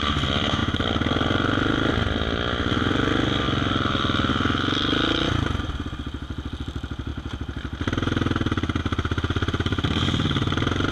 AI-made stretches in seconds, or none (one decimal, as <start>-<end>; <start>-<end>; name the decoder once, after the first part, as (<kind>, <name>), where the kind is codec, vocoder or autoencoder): none